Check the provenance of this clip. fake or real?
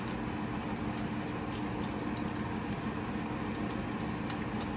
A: real